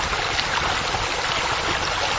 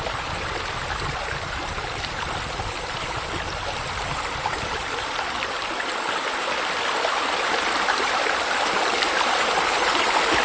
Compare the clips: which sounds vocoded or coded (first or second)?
second